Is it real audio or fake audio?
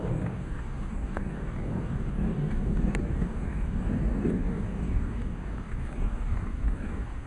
fake